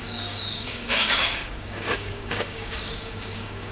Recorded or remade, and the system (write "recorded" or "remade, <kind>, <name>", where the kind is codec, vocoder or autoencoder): remade, codec, DAC